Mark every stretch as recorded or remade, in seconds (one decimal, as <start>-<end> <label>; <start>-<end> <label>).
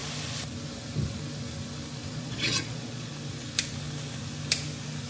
0.0-2.1 recorded; 2.1-3.1 remade; 3.1-5.1 recorded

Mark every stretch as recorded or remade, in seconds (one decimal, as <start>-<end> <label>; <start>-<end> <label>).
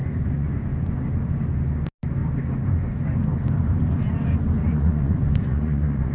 0.0-0.6 remade; 0.6-4.6 recorded; 4.6-6.1 remade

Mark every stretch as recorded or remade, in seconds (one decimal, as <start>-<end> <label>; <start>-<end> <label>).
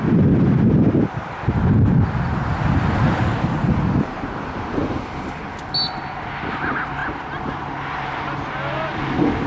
0.0-9.5 recorded